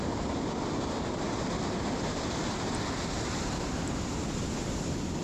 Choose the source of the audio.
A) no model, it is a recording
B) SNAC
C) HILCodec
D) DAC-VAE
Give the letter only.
A